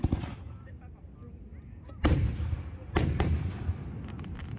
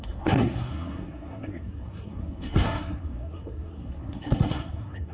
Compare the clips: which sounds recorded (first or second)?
first